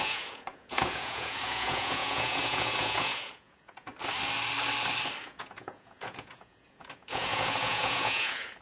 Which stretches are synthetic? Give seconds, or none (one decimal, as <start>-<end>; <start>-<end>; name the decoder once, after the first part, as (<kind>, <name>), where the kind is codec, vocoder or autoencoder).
0.0-3.9 (vocoder, Vocos); 5.2-8.6